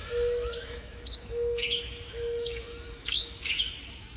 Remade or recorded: remade